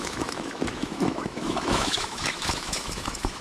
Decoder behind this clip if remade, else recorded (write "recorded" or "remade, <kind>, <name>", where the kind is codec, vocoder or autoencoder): remade, autoencoder, DAC-VAE